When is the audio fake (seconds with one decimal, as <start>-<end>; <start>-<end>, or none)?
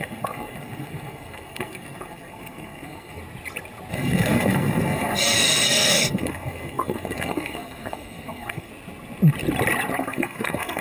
0.0-3.2; 3.9-8.7; 10.0-10.8